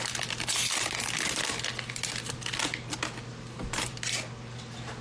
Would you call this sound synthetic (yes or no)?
no